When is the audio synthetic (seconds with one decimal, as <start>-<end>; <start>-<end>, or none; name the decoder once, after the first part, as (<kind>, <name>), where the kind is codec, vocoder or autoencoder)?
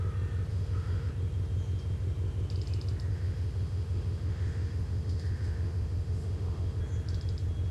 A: 0.5-1.1 (autoencoder, DAC-VAE); 3.1-6.8